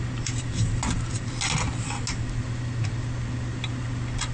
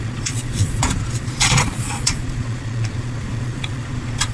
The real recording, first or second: first